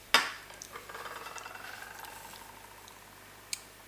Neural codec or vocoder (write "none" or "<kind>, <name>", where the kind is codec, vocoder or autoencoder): none